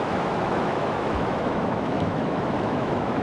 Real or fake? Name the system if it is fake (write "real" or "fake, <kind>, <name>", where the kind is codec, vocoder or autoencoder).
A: fake, autoencoder, DAC-VAE